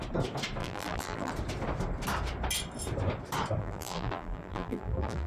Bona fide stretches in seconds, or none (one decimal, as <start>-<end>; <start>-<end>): 0.0-0.6; 1.3-3.6

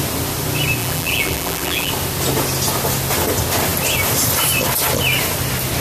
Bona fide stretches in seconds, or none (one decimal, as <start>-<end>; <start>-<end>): 0.0-0.8; 1.9-5.8

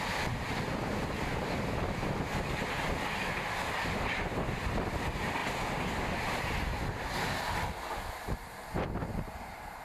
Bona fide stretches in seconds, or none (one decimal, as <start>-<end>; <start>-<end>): 0.0-9.8

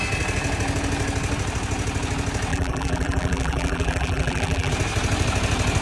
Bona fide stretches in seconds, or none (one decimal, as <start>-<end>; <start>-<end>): 0.0-2.5; 4.7-5.8